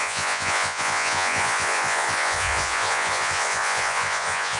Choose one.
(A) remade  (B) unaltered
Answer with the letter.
A